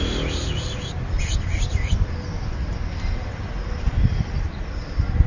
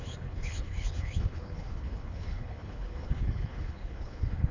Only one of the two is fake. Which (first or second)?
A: second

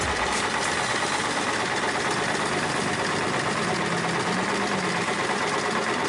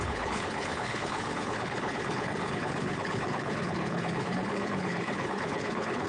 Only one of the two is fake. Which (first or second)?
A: second